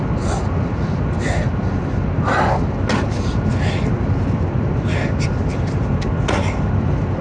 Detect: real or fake real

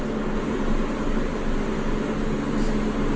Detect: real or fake real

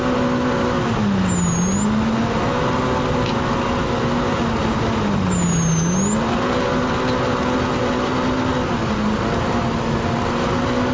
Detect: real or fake real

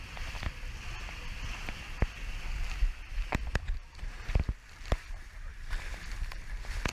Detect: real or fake real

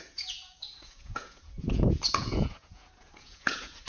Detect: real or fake fake